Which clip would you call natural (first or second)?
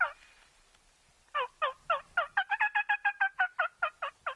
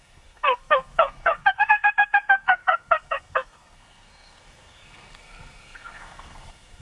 first